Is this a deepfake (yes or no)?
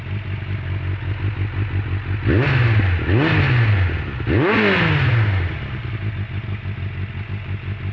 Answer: no